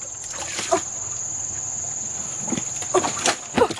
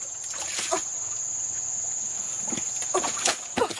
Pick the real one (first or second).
first